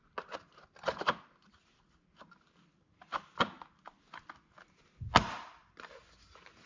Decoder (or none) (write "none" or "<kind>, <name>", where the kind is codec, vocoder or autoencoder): none